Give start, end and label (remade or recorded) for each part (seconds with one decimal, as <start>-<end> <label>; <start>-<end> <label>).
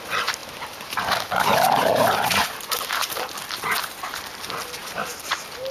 0.0-0.4 recorded; 0.4-3.2 remade; 3.2-4.8 recorded; 4.8-5.3 remade; 5.3-5.7 recorded